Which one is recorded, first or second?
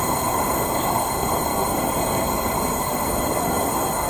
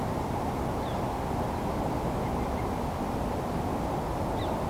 second